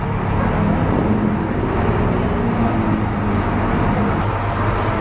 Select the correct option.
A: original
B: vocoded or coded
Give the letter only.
A